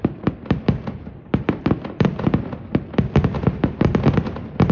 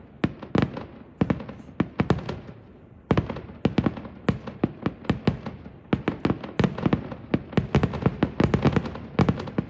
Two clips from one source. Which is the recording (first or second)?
second